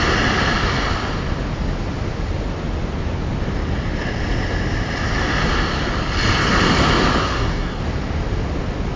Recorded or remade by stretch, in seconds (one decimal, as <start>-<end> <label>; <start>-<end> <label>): 0.0-7.2 recorded; 7.2-7.8 remade; 7.8-9.0 recorded